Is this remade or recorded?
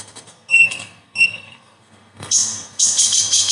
remade